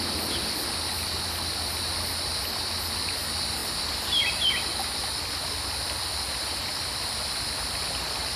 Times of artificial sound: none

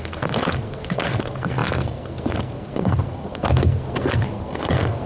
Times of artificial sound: 0.0-5.1 (codec, SNAC)